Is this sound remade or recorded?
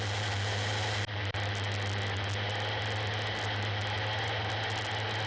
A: recorded